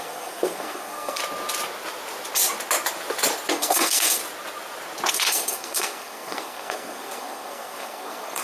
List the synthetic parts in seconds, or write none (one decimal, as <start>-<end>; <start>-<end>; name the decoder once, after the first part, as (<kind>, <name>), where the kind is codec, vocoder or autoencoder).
0.0-1.2 (codec, SNAC); 3.5-4.2; 5.1-8.4